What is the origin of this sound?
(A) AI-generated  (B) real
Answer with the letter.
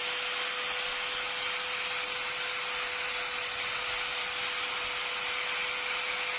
B